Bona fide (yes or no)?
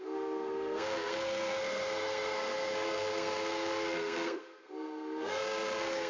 no